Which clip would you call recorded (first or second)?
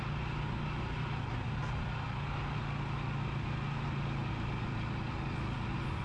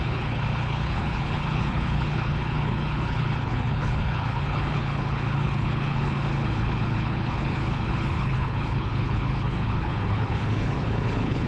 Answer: first